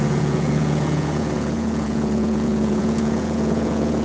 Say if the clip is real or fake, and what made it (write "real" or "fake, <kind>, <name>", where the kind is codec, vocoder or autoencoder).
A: fake, vocoder, Vocos